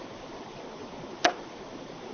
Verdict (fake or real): real